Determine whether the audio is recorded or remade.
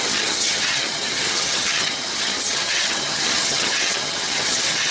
remade